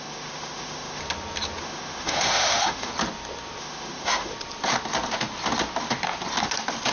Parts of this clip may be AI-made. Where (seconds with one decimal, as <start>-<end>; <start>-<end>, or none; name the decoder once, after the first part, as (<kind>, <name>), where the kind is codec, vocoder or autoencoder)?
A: 0.0-1.0 (autoencoder, DAC-VAE); 1.6-2.9; 3.6-4.3